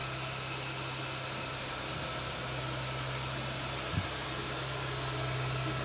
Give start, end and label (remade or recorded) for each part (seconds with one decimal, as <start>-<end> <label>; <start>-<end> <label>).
0.0-5.8 recorded